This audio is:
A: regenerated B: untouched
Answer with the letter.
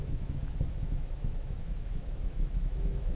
A